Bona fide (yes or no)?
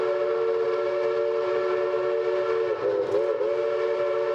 yes